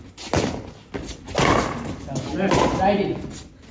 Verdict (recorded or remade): recorded